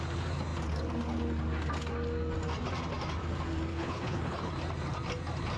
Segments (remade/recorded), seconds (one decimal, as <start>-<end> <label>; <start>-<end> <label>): 0.0-3.7 recorded; 3.7-4.5 remade; 4.5-5.6 recorded